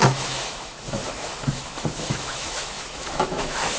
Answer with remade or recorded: remade